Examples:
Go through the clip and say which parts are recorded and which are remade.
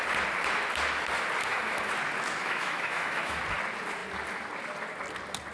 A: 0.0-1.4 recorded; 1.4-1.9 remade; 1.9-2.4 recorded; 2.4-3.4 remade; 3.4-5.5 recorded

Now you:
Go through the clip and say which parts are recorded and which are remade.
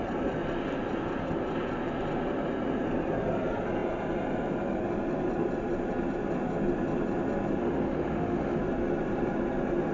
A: 0.0-7.6 recorded; 7.6-8.6 remade; 8.6-9.9 recorded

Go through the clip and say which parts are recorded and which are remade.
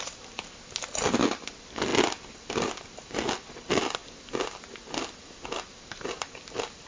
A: 0.0-6.9 recorded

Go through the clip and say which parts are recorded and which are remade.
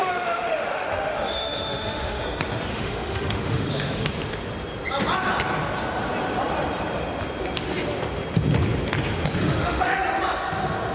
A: 0.0-2.2 remade; 2.2-2.7 recorded; 2.7-4.1 remade; 4.1-9.4 recorded; 9.4-10.0 remade; 10.0-10.9 recorded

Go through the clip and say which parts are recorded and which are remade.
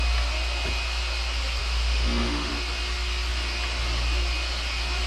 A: 0.0-1.6 recorded; 1.6-2.5 remade; 2.5-5.1 recorded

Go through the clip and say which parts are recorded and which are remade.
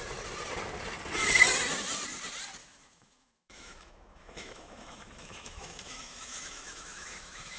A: 0.0-2.6 recorded; 2.6-7.6 remade